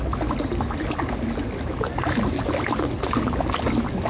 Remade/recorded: recorded